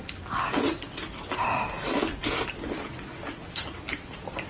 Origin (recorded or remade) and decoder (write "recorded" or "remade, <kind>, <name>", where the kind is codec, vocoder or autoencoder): recorded